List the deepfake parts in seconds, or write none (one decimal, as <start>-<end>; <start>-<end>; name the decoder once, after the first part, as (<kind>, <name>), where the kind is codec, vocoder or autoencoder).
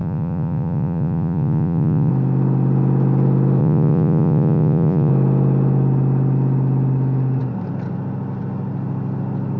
0.0-2.1 (vocoder, Vocos); 3.6-5.1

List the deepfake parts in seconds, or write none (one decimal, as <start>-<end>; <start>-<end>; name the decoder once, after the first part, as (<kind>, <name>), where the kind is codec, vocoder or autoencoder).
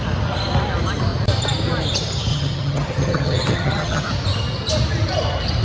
2.3-4.0 (vocoder, HiFi-GAN)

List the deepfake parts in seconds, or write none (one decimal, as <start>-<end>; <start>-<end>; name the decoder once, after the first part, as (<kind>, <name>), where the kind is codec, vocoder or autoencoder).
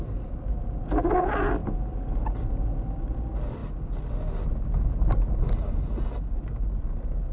none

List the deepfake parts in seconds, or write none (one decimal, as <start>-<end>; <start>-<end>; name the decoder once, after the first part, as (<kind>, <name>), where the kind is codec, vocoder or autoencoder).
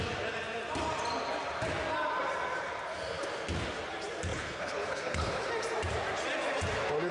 4.3-5.5 (codec, HILCodec)